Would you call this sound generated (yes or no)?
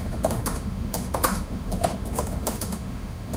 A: yes